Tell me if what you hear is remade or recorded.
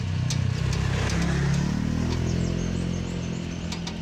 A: recorded